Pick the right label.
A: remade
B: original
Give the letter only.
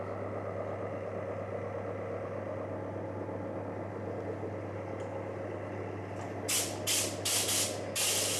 B